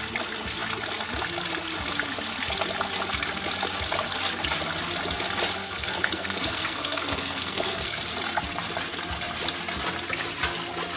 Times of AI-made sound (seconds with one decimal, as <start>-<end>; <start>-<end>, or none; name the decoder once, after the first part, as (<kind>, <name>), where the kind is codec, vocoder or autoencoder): 5.6-8.0 (codec, SNAC)